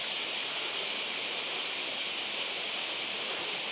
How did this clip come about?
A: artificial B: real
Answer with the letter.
B